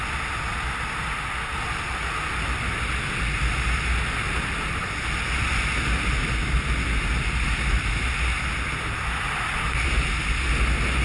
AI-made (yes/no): no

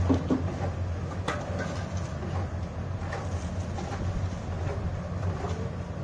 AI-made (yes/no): no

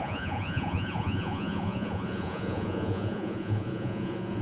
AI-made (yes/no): yes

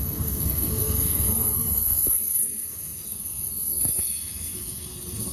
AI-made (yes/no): yes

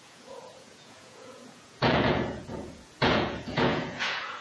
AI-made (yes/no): yes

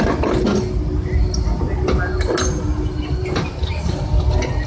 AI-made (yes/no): no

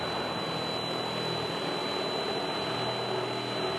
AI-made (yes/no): no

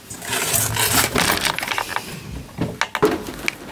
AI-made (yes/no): no